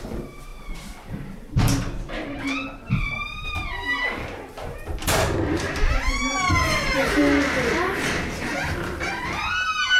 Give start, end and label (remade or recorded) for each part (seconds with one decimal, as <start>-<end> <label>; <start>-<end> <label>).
0.0-7.2 remade; 7.2-7.7 recorded; 7.7-10.0 remade